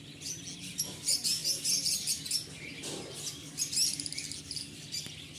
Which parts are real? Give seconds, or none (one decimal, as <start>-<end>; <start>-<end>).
0.0-5.4